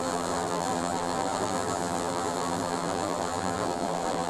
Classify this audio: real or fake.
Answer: fake